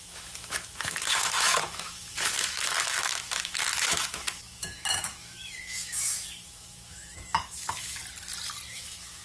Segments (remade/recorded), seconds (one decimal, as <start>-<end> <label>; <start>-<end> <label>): 0.0-8.0 remade; 8.0-8.7 recorded; 8.7-9.2 remade